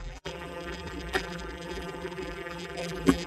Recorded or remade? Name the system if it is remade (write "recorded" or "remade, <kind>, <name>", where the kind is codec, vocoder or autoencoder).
remade, vocoder, BigVGAN v2